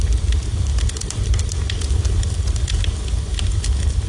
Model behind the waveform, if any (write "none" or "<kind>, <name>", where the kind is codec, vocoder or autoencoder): vocoder, BigVGAN v2